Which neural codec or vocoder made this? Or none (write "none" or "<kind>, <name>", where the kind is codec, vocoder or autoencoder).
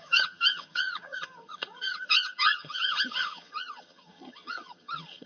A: vocoder, HiFi-GAN